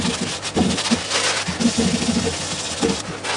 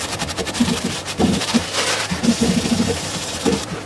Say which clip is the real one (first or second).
first